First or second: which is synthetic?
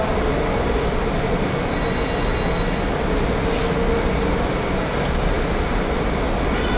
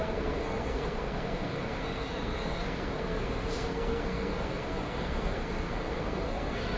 second